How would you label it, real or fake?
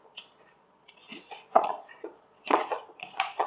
fake